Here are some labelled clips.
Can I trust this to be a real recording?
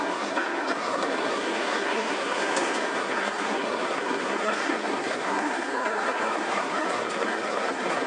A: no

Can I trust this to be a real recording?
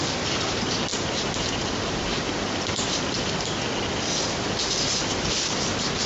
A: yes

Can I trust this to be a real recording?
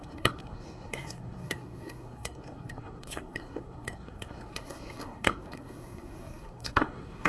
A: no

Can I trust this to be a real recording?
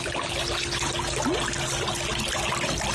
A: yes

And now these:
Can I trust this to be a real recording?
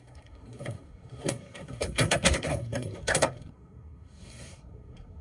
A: no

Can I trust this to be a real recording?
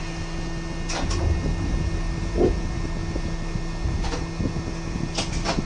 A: yes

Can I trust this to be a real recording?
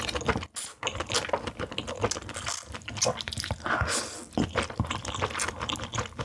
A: yes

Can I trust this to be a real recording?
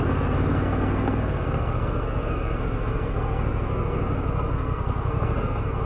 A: no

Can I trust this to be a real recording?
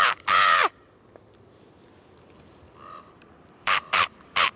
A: no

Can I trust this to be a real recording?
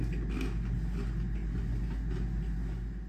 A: yes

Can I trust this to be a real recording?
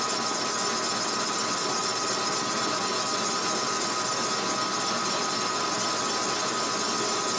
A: no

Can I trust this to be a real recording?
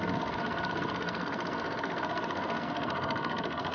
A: no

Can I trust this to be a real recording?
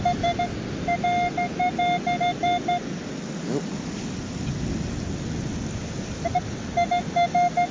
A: yes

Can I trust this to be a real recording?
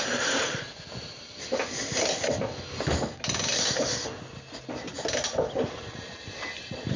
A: yes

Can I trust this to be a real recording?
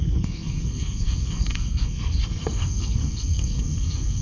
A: no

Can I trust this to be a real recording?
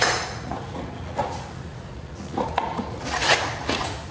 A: no